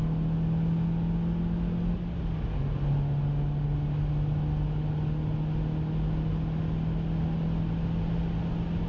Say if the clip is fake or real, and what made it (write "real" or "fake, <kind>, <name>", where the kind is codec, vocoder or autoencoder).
real